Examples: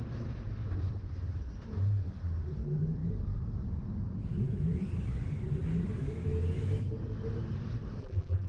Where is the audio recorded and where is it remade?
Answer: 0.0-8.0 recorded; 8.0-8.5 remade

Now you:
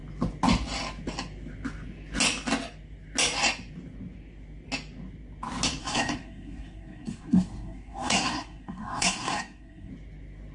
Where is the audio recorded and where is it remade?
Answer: 0.0-5.8 recorded; 5.8-9.9 remade; 9.9-10.5 recorded

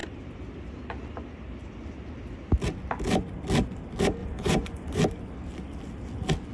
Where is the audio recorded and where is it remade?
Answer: 0.0-4.2 recorded; 4.2-5.0 remade; 5.0-6.5 recorded

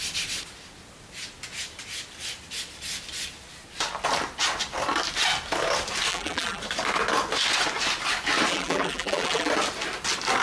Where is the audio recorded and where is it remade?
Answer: 0.0-6.1 recorded; 6.1-6.6 remade; 6.6-8.5 recorded; 8.5-9.5 remade; 9.5-10.4 recorded